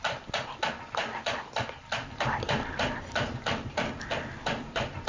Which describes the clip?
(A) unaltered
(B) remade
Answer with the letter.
A